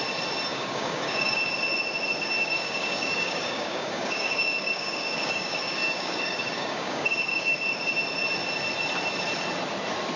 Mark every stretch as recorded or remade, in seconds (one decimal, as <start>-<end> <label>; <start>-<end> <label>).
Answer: 0.0-0.5 recorded; 0.5-1.5 remade; 1.5-2.4 recorded; 2.4-7.6 remade; 7.6-10.2 recorded